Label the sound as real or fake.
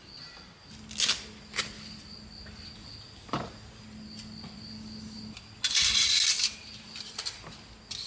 real